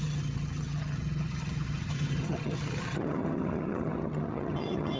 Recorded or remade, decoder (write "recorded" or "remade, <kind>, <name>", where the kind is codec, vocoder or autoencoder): remade, vocoder, HiFi-GAN